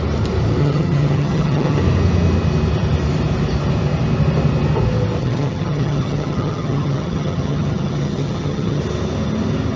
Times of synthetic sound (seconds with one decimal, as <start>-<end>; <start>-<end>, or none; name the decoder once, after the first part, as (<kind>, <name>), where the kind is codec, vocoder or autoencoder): 0.6-1.8 (vocoder, HiFi-GAN); 5.2-8.8

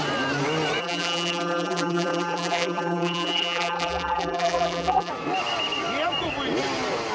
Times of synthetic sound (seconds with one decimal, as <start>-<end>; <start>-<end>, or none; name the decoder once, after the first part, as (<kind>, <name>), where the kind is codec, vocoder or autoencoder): 0.8-5.1 (vocoder, BigVGAN v2)

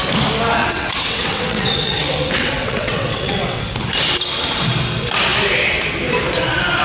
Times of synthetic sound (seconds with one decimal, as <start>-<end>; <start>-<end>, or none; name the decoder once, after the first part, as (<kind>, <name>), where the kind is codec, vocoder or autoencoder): 0.6-3.6 (vocoder, WaveNeXt)

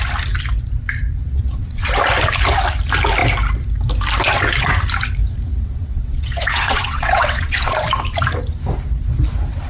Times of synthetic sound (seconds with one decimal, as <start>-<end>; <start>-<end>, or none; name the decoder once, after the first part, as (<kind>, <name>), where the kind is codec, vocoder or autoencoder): 1.2-1.9 (vocoder, WaveNeXt); 5.5-7.7

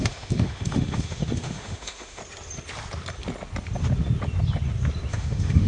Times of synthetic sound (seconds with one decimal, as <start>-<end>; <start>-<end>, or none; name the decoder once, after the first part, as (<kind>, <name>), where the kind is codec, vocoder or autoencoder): 0.0-2.2 (autoencoder, DAC-VAE); 5.1-5.7

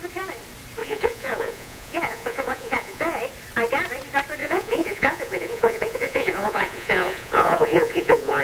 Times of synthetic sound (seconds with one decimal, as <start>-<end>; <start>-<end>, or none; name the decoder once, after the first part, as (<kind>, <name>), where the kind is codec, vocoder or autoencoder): 0.8-3.2 (vocoder, Vocos); 4.4-8.4

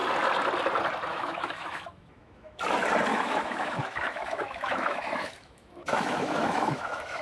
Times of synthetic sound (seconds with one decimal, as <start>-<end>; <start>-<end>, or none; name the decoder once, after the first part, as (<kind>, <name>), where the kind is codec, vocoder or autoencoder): 1.1-2.6 (autoencoder, DAC-VAE); 3.1-7.2

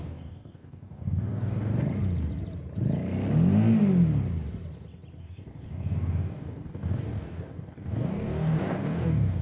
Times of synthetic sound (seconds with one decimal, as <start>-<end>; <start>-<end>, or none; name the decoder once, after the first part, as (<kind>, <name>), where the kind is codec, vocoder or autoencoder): 0.0-1.7 (codec, DAC); 5.2-9.4